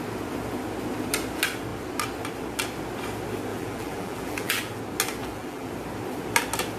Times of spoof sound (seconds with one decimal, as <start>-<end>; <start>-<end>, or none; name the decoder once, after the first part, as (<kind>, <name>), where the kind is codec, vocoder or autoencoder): 3.5-4.8 (vocoder, BigVGAN v2); 5.2-5.7